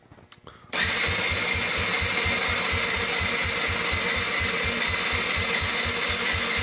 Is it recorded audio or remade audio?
recorded